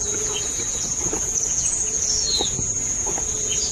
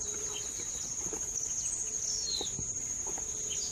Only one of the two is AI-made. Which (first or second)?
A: first